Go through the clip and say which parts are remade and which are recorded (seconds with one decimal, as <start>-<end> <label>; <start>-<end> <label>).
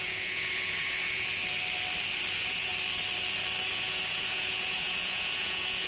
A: 0.0-1.4 remade; 1.4-2.3 recorded; 2.3-2.7 remade; 2.7-3.6 recorded; 3.6-5.9 remade